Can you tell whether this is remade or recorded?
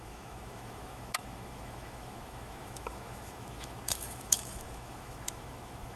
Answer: remade